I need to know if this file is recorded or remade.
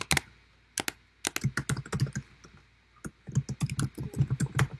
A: recorded